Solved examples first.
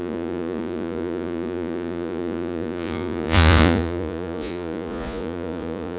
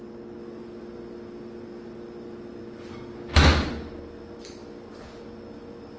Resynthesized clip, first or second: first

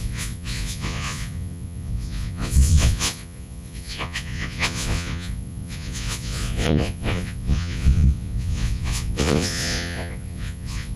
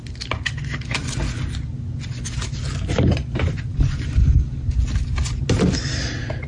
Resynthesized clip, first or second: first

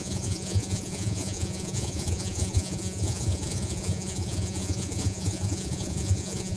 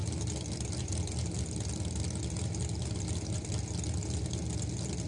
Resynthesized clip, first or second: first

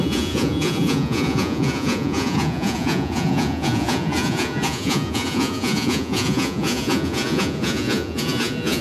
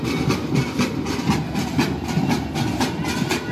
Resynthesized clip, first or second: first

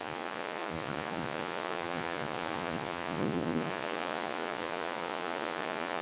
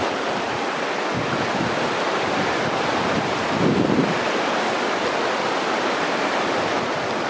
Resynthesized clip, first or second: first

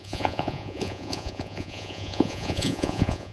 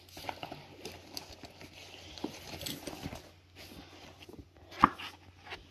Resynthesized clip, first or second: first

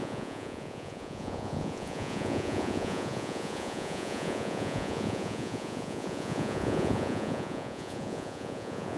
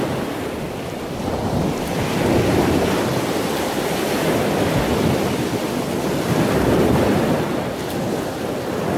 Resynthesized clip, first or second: first